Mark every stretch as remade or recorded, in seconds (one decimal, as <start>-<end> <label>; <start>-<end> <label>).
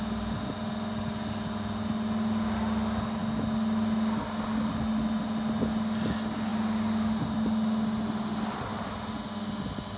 0.0-10.0 recorded